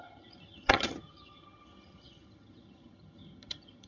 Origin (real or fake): fake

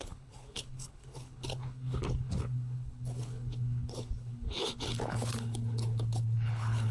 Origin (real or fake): fake